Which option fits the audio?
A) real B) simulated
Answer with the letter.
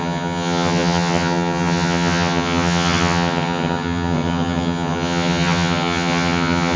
B